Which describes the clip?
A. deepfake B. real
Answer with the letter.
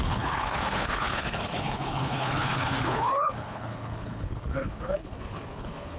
A